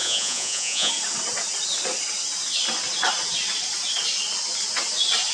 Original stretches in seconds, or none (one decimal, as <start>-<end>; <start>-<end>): 0.9-5.3